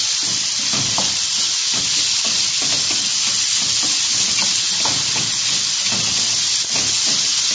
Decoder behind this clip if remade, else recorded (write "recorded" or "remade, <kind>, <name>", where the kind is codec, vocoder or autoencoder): recorded